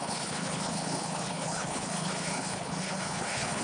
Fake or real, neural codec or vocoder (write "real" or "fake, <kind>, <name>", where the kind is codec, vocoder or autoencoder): fake, codec, HILCodec